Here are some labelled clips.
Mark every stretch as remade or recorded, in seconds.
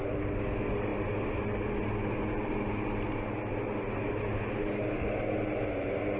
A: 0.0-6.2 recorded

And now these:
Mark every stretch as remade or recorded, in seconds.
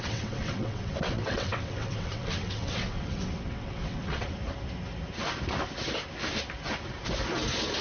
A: 0.0-4.4 remade; 4.4-7.8 recorded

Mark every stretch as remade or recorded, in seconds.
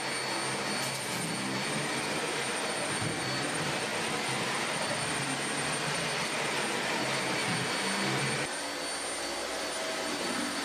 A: 0.0-3.9 recorded; 3.9-5.2 remade; 5.2-10.6 recorded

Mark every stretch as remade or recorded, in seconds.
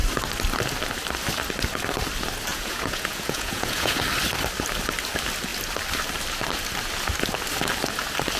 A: 0.0-2.5 recorded; 2.5-4.0 remade; 4.0-8.4 recorded